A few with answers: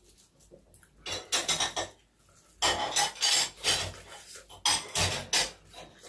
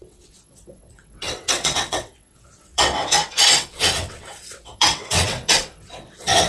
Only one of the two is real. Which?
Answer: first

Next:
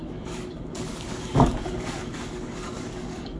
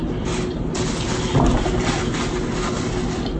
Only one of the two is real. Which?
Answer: second